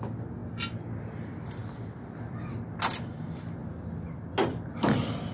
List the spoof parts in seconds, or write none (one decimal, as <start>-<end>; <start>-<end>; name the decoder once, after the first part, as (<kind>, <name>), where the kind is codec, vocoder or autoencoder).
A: none